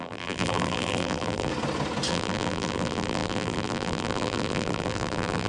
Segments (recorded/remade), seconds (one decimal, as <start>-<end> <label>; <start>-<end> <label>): 0.0-1.5 remade; 1.5-2.1 recorded; 2.1-5.5 remade